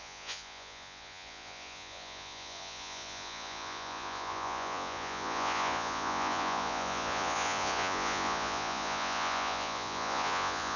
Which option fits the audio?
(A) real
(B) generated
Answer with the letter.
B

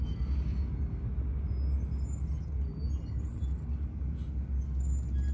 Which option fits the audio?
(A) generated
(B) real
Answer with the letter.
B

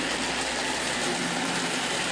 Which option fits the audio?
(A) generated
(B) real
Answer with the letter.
B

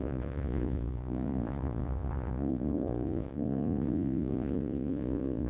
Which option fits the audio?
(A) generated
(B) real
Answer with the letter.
A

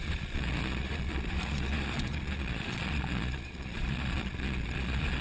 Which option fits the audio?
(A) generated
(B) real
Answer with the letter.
A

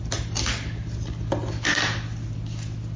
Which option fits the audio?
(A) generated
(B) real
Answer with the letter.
B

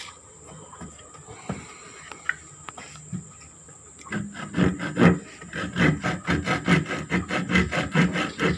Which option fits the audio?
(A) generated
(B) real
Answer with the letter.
B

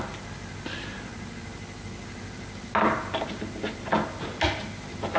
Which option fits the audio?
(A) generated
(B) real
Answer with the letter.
B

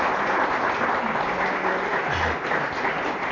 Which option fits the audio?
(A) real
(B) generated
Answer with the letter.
A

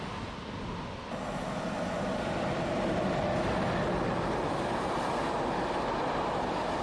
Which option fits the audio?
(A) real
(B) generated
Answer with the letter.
A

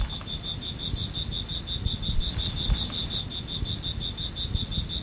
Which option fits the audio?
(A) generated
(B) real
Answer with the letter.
B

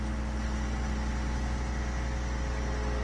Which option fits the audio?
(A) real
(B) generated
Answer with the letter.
A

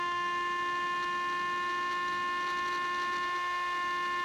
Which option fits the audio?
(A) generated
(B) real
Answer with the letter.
B